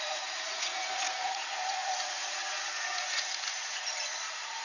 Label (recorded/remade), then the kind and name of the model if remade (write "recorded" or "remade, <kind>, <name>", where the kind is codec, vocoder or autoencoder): remade, vocoder, Vocos